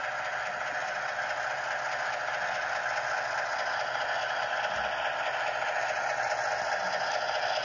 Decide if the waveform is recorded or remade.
recorded